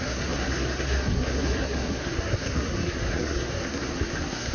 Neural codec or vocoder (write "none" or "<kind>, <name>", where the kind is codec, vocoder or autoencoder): codec, SNAC